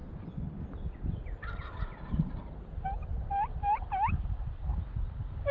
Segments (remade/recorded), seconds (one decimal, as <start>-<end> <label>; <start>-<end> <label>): 0.0-5.5 recorded